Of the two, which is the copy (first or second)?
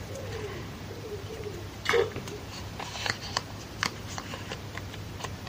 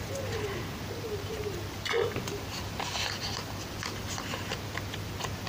first